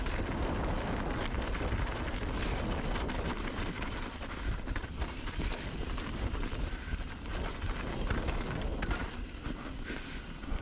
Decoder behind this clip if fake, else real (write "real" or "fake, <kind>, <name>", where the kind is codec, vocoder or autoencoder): real